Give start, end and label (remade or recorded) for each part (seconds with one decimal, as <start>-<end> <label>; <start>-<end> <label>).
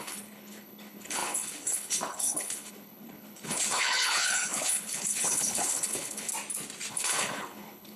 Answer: 0.0-6.3 remade; 6.3-6.9 recorded; 6.9-8.0 remade